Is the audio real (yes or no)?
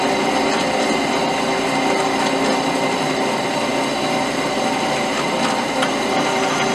yes